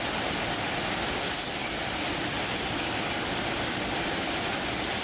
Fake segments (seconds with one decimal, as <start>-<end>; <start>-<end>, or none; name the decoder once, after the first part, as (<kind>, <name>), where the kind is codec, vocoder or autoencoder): none